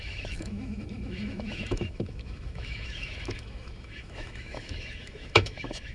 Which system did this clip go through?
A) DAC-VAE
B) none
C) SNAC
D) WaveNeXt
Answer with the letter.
A